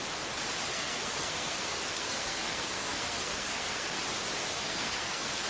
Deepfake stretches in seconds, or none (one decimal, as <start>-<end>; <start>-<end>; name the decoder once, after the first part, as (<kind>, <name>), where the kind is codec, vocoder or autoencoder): 0.7-4.0 (codec, SNAC); 4.4-5.5